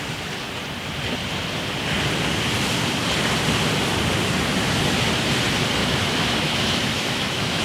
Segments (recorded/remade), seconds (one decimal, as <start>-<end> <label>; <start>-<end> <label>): 0.0-5.8 recorded; 5.8-7.6 remade